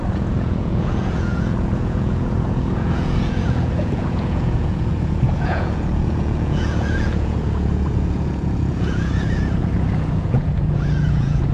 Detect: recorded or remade remade